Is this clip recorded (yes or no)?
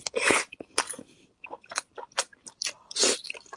yes